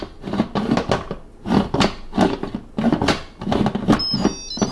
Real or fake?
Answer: real